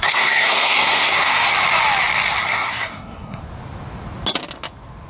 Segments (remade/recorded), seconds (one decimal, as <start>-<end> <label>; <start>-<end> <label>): 0.0-1.5 remade; 1.5-2.4 recorded; 2.4-3.4 remade; 3.4-5.1 recorded